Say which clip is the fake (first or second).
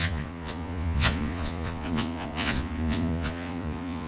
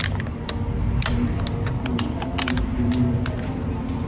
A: first